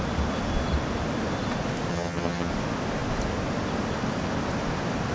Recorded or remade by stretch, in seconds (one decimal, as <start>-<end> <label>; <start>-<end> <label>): 0.0-1.9 recorded; 1.9-2.5 remade; 2.5-5.1 recorded